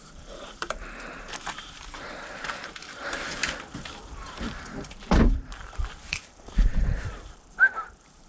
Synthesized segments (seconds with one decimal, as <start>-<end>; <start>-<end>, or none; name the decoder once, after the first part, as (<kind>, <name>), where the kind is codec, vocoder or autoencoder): 0.0-3.4 (vocoder, BigVGAN v2); 4.0-8.3